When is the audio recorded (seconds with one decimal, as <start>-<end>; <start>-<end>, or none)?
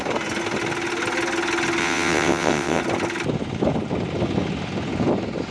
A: 0.0-1.8; 2.8-5.5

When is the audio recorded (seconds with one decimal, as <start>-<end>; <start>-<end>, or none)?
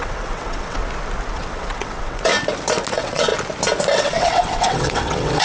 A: 0.8-1.3; 2.3-2.9; 3.3-3.9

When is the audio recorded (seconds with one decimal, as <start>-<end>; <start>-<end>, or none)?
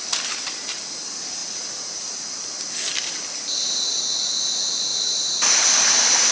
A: 0.0-6.3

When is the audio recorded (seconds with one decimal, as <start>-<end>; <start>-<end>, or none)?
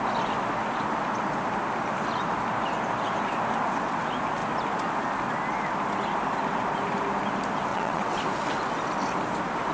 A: 0.0-7.7; 8.2-9.7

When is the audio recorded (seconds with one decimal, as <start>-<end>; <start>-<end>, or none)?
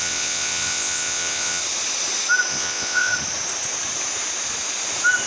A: 1.6-2.5; 3.1-5.3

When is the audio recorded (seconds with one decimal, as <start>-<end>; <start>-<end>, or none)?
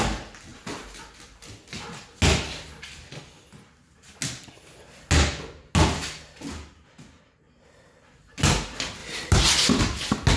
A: 0.0-10.4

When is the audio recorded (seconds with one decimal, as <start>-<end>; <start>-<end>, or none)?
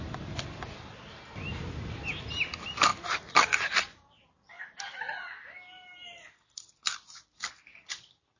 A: 0.0-8.4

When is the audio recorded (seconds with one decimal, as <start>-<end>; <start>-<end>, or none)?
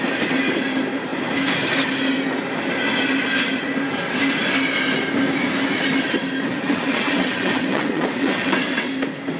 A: 0.0-6.5; 8.9-9.4